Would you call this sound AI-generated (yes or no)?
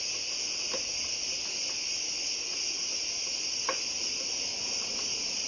no